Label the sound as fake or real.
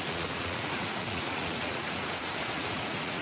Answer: fake